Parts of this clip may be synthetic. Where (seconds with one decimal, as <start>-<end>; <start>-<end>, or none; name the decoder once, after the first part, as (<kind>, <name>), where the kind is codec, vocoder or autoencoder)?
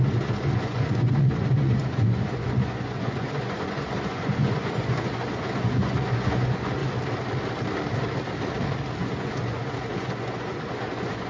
0.0-6.8 (vocoder, Vocos); 9.0-11.3